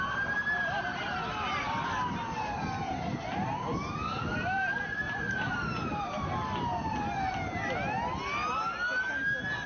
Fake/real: real